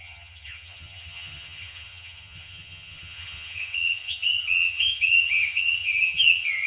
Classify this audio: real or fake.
fake